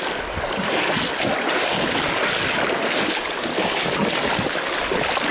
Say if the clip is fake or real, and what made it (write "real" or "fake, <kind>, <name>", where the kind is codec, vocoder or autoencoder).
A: real